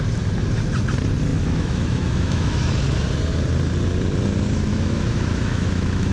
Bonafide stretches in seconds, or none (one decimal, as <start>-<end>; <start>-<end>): 0.0-1.3; 2.7-4.7

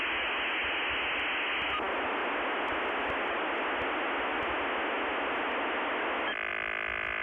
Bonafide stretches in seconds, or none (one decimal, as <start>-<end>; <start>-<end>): 0.0-7.2